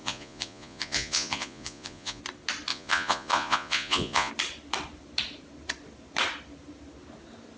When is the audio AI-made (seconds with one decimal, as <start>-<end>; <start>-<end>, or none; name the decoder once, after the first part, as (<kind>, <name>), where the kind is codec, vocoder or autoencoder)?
0.0-2.2 (vocoder, Vocos); 2.7-4.3